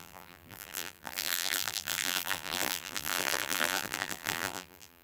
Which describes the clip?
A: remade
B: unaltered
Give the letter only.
A